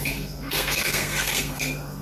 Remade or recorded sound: remade